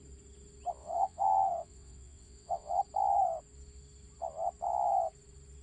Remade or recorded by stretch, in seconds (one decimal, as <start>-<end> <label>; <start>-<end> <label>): 0.0-0.8 recorded; 0.8-2.7 remade; 2.7-5.6 recorded